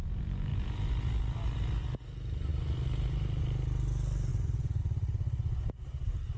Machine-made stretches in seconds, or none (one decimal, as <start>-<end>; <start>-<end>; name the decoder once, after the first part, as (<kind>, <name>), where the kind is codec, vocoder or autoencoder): 4.3-4.8 (vocoder, Vocos)